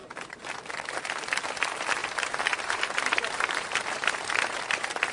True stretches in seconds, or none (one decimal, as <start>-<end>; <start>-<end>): 0.7-2.0